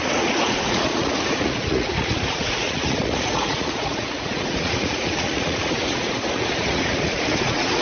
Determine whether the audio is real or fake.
fake